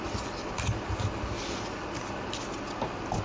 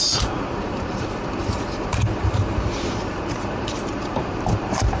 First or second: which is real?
first